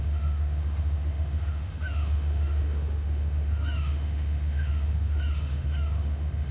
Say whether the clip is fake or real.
fake